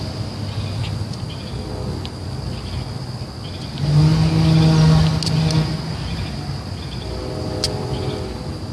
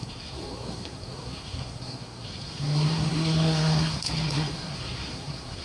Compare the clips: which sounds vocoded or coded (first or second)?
second